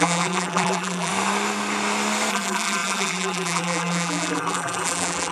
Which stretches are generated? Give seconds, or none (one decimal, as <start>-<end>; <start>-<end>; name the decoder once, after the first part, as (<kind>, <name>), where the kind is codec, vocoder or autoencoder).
0.0-1.1 (vocoder, BigVGAN v2); 2.3-5.3

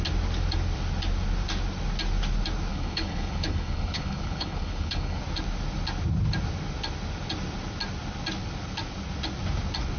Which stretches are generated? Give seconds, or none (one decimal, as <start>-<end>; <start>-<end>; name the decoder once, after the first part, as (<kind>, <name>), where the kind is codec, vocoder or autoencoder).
2.7-5.2 (codec, HILCodec)

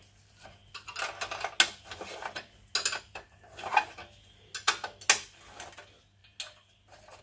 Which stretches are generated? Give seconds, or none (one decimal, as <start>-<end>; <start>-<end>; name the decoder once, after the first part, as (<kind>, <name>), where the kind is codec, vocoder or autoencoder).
none